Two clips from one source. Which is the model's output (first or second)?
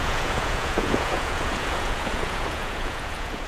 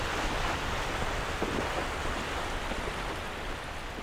first